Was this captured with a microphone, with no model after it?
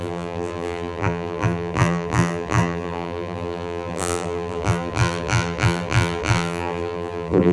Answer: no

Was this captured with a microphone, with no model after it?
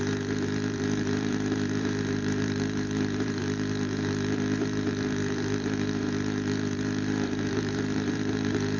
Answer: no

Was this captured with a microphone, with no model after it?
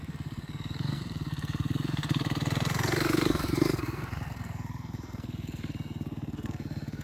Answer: no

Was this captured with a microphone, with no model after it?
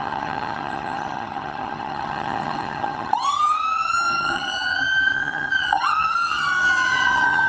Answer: no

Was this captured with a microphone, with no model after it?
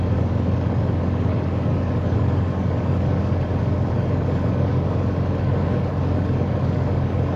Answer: no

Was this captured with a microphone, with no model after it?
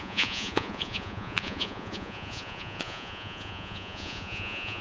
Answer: no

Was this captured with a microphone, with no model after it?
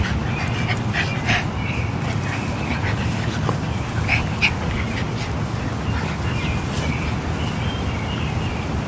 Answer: yes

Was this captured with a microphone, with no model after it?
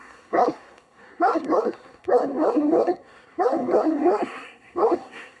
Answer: no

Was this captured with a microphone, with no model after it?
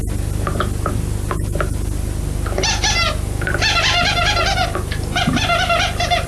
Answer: yes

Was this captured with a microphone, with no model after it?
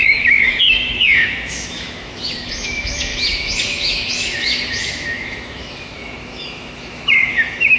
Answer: no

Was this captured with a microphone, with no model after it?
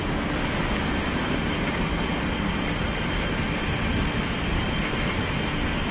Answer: yes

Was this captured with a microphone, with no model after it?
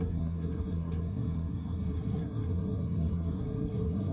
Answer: no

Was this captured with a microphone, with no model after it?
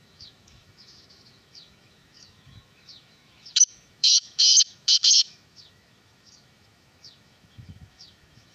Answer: no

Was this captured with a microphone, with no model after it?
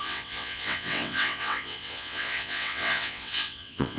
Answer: no